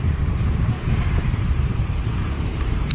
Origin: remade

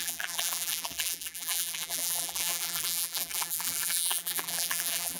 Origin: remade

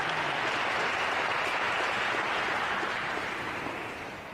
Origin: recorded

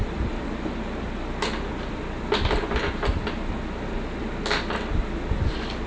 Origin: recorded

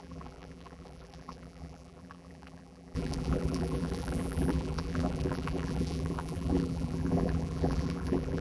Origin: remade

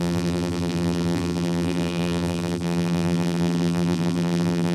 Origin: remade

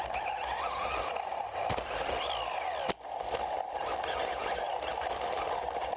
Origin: recorded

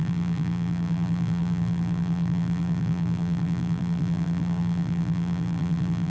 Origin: remade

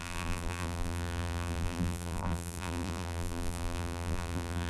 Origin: remade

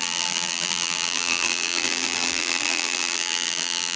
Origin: remade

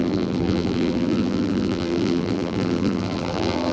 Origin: remade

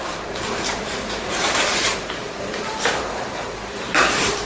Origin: remade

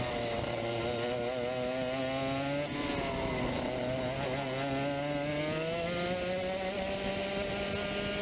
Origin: recorded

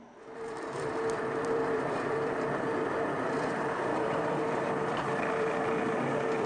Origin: remade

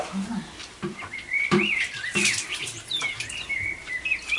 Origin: remade